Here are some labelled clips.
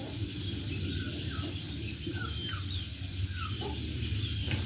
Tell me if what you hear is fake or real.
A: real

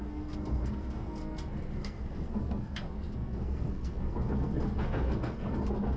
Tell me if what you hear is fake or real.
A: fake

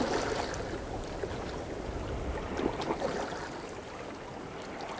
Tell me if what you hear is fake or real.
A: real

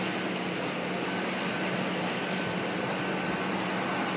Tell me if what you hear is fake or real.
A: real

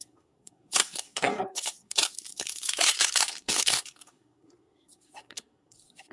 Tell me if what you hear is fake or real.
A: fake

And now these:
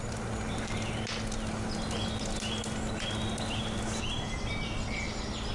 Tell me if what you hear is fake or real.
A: real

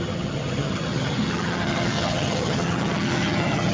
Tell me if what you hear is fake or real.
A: fake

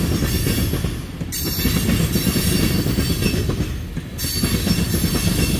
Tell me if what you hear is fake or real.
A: real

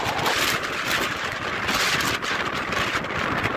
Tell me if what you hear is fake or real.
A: real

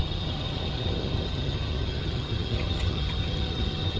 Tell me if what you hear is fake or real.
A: fake